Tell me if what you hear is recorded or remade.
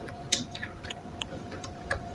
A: remade